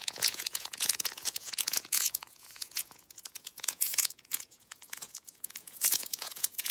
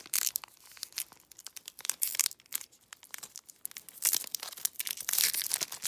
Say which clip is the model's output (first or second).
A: first